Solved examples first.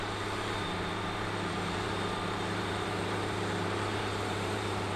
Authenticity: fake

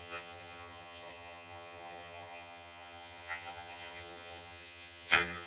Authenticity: fake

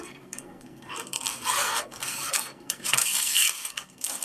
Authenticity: fake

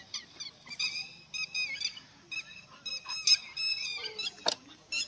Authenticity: real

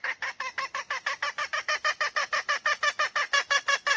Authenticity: real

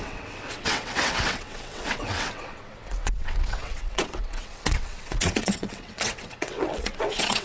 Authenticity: fake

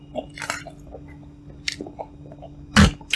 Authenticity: real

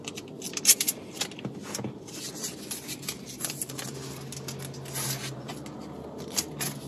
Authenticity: real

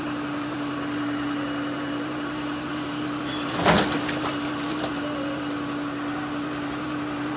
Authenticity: fake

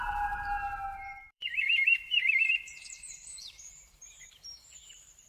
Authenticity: fake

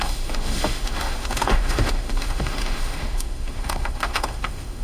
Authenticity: fake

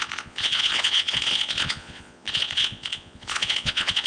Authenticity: fake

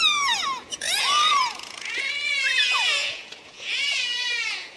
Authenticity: fake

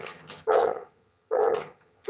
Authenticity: fake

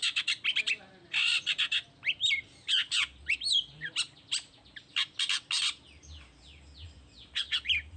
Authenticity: real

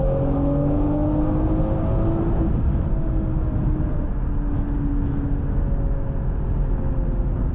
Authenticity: real